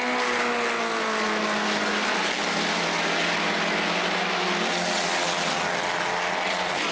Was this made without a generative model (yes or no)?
yes